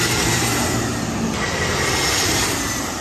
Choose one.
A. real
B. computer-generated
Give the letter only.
B